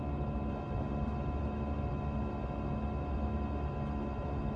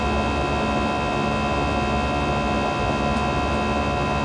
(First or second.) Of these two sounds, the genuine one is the second